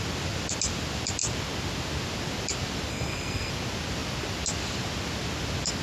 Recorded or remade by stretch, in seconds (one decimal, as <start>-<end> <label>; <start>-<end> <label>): 0.0-2.9 recorded; 2.9-3.5 remade; 3.5-5.8 recorded